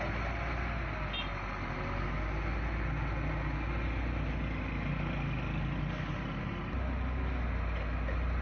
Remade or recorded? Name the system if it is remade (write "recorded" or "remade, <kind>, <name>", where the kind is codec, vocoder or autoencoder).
recorded